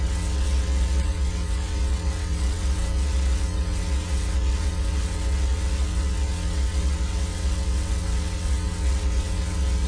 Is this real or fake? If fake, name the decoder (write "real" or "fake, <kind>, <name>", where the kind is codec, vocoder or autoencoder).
fake, vocoder, WaveNeXt